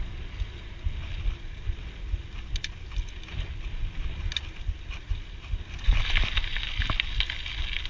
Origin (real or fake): real